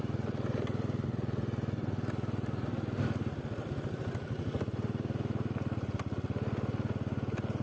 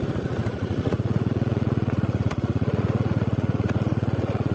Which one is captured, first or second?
first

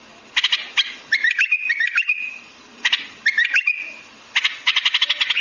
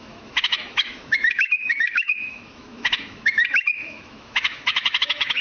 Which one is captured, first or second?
first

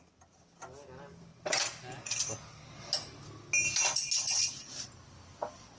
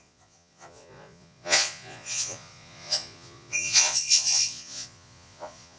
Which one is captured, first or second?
first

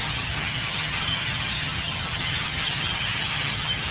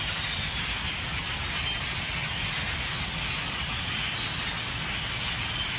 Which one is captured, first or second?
second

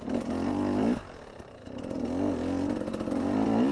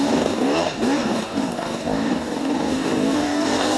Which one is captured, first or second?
first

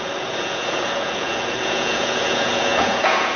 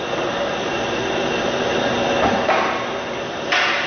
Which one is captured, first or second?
second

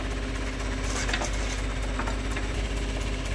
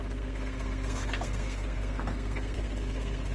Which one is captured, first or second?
first